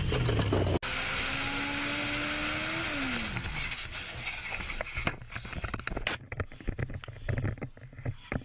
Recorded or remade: recorded